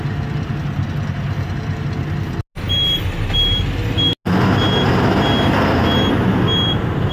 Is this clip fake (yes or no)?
no